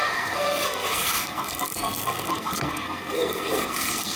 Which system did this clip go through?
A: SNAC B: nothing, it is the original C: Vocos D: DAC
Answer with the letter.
A